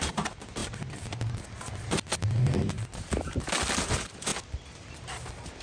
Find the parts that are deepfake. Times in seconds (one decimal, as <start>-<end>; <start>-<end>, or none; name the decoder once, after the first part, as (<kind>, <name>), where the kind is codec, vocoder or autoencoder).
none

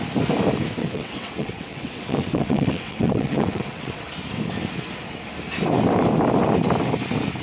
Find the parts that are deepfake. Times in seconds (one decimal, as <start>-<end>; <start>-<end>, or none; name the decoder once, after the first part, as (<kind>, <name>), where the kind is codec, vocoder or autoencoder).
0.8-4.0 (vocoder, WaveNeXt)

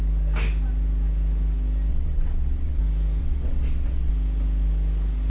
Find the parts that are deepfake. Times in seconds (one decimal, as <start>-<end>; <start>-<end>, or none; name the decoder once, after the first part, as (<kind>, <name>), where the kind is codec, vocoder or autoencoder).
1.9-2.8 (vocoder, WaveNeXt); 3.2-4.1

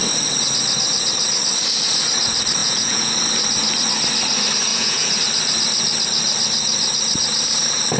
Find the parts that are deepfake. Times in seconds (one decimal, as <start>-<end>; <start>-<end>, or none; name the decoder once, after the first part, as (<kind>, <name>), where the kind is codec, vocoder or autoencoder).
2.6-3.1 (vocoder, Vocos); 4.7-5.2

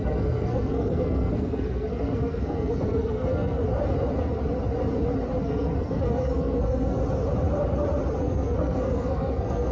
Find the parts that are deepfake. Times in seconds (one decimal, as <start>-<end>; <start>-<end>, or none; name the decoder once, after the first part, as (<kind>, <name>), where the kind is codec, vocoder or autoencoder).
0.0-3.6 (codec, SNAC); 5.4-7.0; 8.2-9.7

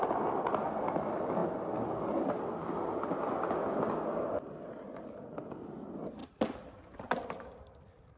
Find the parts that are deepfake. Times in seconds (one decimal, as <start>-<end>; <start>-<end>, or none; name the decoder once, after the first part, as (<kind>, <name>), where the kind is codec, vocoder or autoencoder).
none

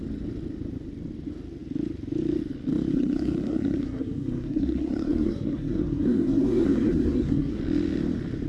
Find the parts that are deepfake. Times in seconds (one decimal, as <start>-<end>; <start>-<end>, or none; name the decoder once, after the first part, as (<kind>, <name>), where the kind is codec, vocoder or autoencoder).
2.9-7.6 (codec, SNAC)